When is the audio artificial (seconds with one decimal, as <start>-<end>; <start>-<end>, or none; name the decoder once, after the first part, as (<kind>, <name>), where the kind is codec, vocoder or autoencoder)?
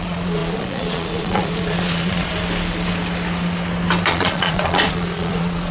0.0-2.3 (vocoder, Vocos); 4.1-5.7